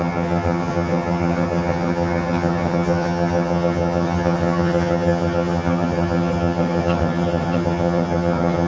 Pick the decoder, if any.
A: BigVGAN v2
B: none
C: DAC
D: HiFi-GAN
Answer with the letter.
D